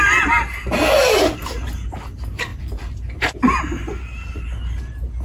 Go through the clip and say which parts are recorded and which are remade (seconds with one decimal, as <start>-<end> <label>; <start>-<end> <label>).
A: 0.0-5.2 recorded